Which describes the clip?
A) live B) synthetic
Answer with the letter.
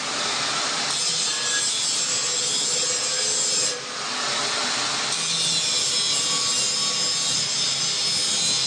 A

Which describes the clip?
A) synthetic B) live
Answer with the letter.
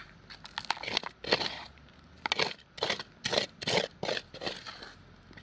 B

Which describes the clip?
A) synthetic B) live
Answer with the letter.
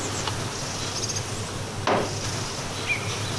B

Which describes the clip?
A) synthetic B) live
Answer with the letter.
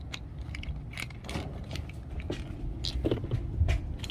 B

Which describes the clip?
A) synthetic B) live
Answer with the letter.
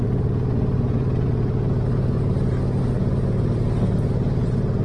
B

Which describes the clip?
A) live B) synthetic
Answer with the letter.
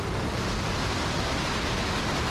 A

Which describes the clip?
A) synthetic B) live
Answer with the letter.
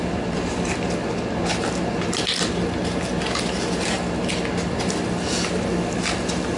B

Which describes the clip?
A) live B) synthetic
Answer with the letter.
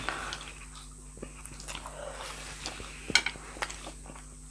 A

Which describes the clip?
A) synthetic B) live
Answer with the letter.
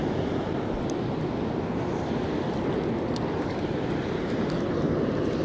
B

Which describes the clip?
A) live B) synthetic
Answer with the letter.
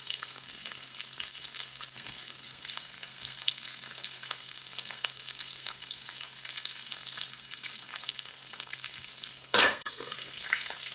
B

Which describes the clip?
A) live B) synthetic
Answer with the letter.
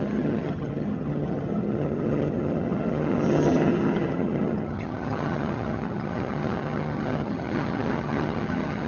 B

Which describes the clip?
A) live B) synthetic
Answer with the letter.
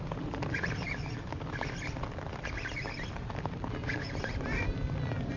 A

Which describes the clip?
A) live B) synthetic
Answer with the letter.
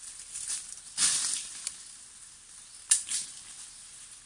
A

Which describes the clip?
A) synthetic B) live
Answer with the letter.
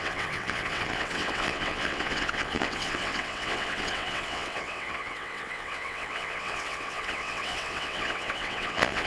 A